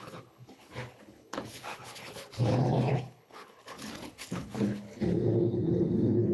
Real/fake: fake